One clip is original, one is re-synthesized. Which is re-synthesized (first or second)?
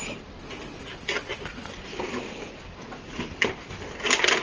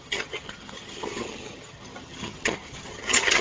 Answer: second